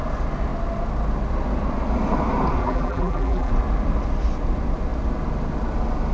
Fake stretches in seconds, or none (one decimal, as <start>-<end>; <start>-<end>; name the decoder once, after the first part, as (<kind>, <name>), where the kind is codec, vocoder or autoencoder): 2.6-3.5 (vocoder, BigVGAN v2)